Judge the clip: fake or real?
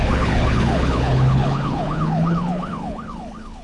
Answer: fake